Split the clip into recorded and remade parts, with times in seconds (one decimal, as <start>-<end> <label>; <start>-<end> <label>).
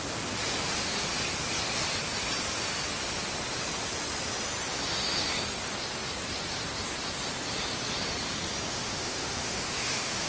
0.0-8.7 recorded; 8.7-10.3 remade